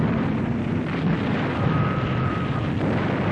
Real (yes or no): no